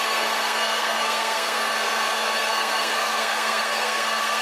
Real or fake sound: fake